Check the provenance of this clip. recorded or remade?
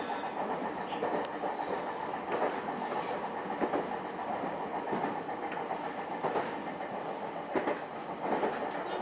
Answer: recorded